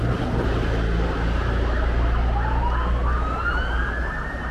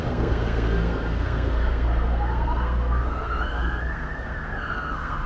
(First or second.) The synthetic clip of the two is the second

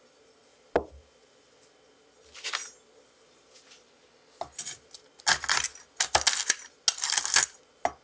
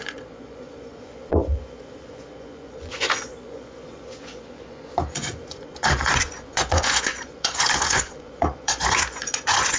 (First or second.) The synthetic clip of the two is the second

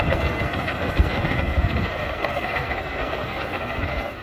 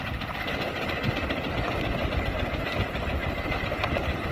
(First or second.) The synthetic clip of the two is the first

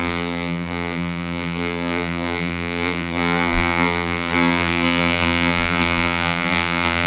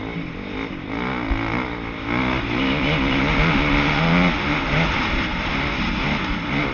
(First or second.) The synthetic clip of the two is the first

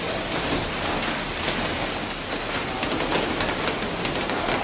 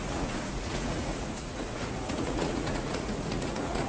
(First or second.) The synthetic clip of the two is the second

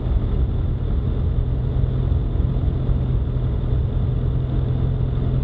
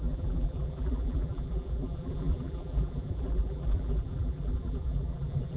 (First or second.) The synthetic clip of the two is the second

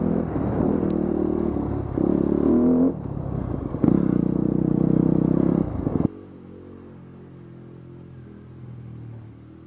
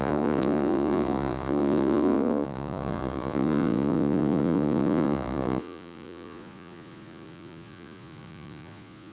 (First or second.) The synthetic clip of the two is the second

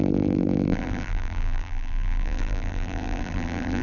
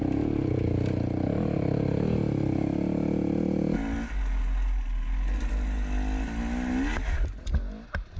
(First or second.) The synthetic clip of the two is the first